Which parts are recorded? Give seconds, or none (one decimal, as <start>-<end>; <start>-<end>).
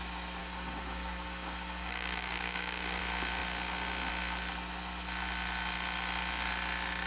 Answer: 0.0-0.4; 3.0-7.1